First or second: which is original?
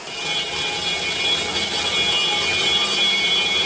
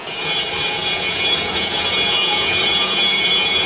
first